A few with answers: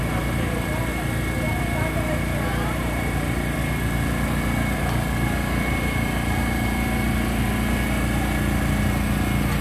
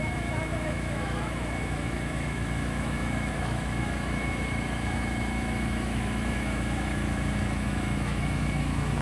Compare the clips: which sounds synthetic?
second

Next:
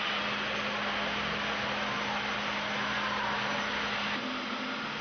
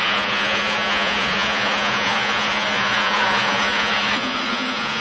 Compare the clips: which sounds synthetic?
second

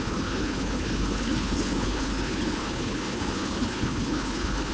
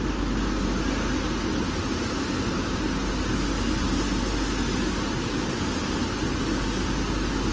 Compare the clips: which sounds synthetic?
first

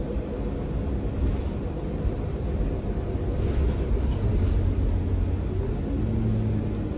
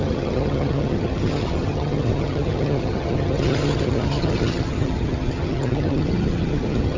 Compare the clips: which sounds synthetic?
second